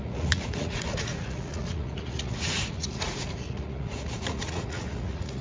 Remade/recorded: remade